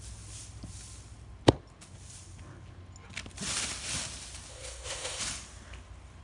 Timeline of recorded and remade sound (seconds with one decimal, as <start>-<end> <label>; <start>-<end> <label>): 0.0-4.5 recorded; 4.5-5.2 remade; 5.2-6.2 recorded